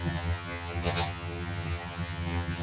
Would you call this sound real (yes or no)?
no